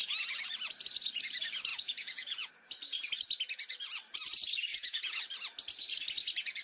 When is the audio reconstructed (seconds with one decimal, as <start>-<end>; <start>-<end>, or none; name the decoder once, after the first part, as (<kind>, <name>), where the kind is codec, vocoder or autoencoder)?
1.7-2.5 (vocoder, Vocos); 4.7-5.2

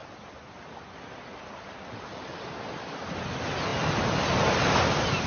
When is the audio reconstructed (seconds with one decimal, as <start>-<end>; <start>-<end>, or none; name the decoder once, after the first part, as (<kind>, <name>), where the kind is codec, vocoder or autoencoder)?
none

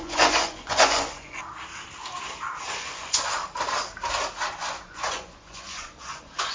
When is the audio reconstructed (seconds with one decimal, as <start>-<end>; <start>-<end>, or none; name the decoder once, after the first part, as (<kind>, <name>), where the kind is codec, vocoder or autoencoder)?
0.0-1.4 (vocoder, Vocos); 2.8-3.4; 4.6-6.5

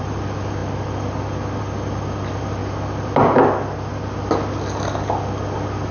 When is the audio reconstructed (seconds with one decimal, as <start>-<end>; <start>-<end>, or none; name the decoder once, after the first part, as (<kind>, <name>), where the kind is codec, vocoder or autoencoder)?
none